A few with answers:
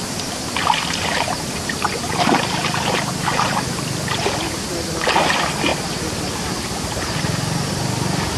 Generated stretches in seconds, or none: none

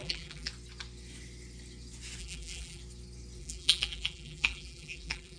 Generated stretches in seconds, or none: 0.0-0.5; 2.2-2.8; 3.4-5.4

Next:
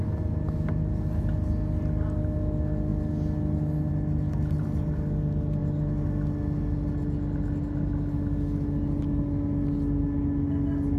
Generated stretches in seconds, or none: none

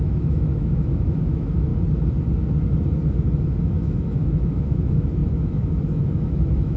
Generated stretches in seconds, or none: 0.0-1.7; 3.6-6.8

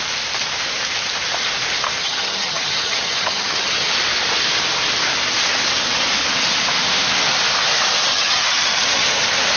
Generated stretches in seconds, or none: 2.0-3.9; 8.1-9.0

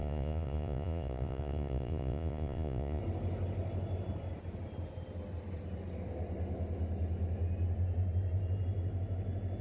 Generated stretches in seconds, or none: 0.0-3.0

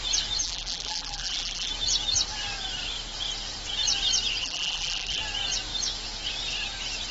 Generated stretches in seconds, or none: 0.4-1.7; 4.4-5.2

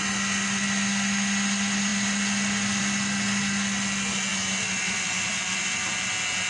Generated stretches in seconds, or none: none